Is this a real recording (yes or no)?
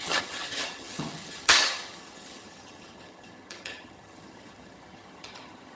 no